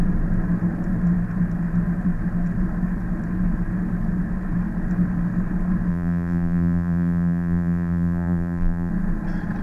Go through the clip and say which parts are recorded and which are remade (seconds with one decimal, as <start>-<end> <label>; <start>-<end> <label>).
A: 0.0-5.9 recorded; 5.9-8.9 remade; 8.9-9.6 recorded